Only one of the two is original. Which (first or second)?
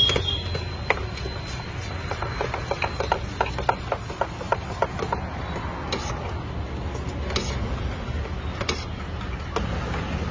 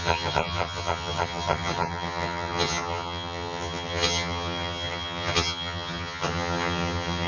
first